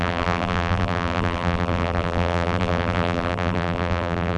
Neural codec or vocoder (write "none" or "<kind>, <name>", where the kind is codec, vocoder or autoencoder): vocoder, BigVGAN v2